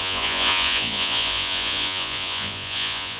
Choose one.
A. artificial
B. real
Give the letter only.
A